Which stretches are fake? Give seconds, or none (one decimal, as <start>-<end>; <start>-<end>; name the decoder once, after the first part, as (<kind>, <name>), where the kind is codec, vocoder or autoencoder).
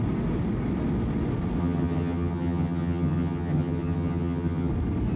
1.6-4.7 (vocoder, HiFi-GAN)